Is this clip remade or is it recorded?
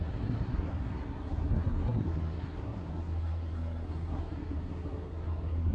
remade